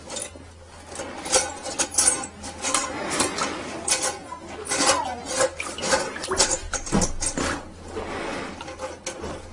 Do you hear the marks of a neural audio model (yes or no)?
no